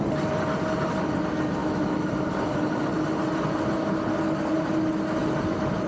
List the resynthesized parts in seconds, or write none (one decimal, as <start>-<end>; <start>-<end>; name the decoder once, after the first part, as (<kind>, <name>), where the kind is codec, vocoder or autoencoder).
1.6-2.1 (autoencoder, DAC-VAE)